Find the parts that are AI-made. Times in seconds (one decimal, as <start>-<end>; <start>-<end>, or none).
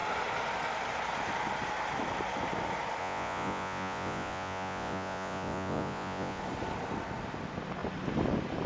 3.0-6.4